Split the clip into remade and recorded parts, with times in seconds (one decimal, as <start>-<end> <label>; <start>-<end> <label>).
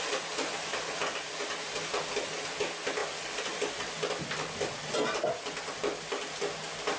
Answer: 0.0-1.0 recorded; 1.0-1.6 remade; 1.6-3.0 recorded; 3.0-4.2 remade; 4.2-5.8 recorded; 5.8-7.0 remade